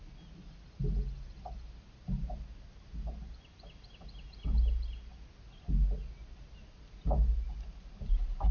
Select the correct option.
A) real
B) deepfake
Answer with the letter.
A